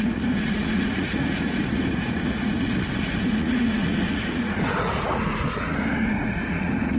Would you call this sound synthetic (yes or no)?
yes